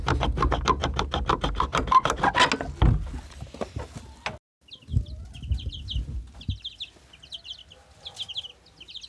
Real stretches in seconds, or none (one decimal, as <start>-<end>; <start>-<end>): 0.0-9.1